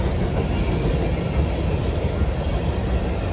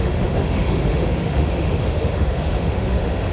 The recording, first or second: first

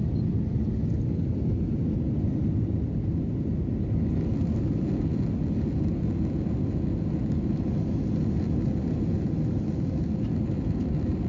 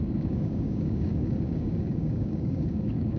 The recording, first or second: first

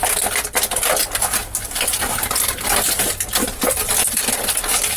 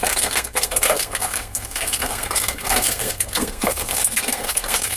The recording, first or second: first